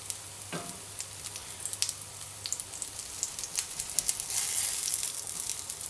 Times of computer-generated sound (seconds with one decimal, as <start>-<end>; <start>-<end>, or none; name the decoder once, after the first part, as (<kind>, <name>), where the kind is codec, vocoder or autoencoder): none